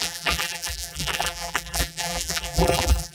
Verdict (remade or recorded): remade